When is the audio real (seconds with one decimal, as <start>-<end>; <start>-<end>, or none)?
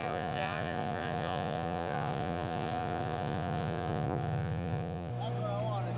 5.1-6.0